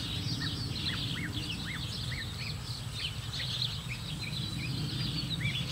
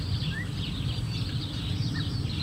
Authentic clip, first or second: first